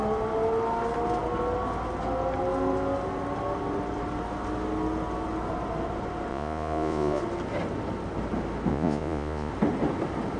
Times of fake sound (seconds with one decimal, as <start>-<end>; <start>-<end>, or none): 6.3-7.2; 8.7-9.5